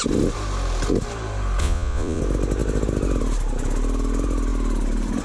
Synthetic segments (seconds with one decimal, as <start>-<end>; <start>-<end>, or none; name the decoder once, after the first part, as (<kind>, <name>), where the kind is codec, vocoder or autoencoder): 1.6-2.2 (vocoder, Vocos)